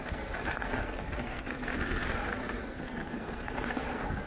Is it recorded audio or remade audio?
remade